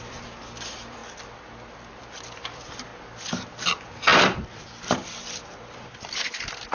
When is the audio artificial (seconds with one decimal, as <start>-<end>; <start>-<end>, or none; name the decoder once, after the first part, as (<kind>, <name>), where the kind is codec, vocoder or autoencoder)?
0.0-1.0 (vocoder, BigVGAN v2); 1.9-2.9; 3.5-6.7